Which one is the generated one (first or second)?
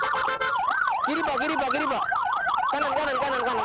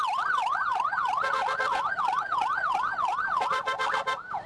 second